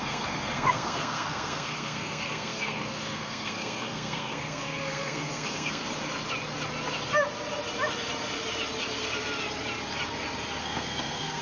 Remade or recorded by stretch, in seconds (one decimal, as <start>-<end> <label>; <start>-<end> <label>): 0.0-5.8 remade; 5.8-10.6 recorded; 10.6-11.4 remade